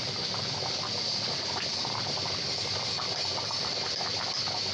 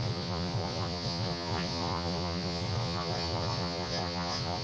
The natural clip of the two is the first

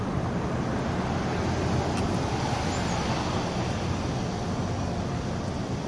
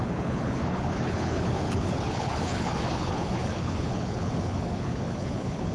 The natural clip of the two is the first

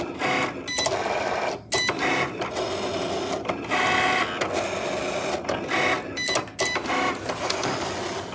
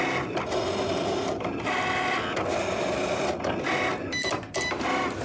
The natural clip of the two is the first